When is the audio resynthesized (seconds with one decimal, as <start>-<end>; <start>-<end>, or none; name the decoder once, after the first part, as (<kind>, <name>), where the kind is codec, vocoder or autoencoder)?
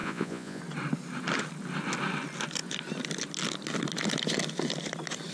0.0-0.6 (vocoder, Vocos)